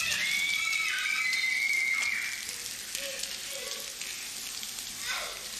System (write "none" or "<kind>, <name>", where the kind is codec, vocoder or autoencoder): none